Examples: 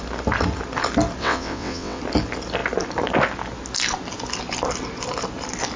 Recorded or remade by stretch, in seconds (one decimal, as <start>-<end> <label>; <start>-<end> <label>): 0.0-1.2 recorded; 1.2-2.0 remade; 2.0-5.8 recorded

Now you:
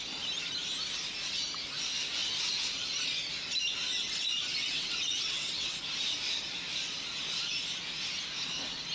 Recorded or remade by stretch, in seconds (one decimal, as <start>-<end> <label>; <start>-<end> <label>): 0.0-4.6 recorded; 4.6-5.8 remade; 5.8-8.9 recorded

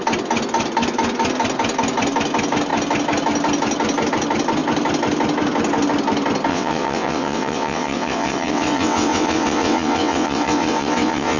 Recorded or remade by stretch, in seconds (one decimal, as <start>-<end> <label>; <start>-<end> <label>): 0.0-6.5 recorded; 6.5-11.4 remade

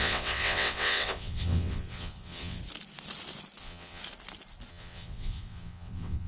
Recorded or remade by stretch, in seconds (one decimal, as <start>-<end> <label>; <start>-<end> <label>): 0.0-2.6 remade; 2.6-3.6 recorded; 3.6-4.0 remade; 4.0-4.7 recorded; 4.7-6.3 remade

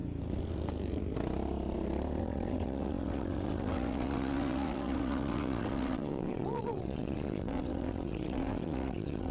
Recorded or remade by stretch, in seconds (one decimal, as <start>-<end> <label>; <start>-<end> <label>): 0.0-2.2 recorded; 2.2-9.3 remade

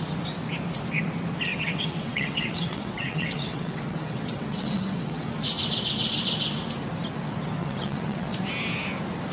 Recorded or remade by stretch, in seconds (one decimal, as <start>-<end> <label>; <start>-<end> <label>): 0.0-1.5 recorded; 1.5-5.3 remade; 5.3-7.6 recorded; 7.6-8.4 remade; 8.4-9.3 recorded

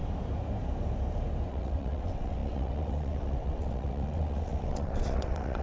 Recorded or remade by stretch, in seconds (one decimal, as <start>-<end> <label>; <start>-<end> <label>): 0.0-1.5 recorded; 1.5-5.6 remade

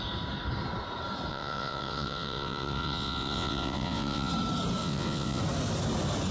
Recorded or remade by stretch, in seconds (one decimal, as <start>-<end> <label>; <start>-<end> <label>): 0.0-1.3 recorded; 1.3-4.3 remade; 4.3-4.8 recorded; 4.8-5.4 remade; 5.4-6.3 recorded